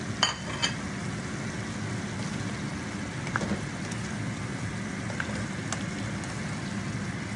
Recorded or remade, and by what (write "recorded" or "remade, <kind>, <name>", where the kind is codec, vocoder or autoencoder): recorded